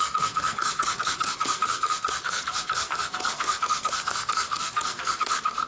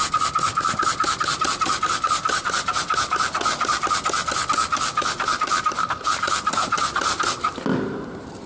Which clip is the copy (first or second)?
first